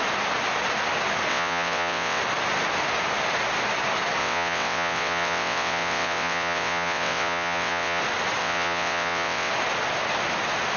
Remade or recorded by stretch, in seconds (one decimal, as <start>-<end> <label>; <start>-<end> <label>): 0.0-1.3 recorded; 1.3-2.2 remade; 2.2-4.2 recorded; 4.2-8.0 remade; 8.0-8.4 recorded; 8.4-9.5 remade; 9.5-10.8 recorded